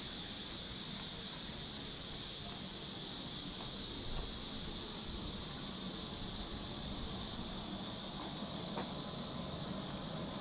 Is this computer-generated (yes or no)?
no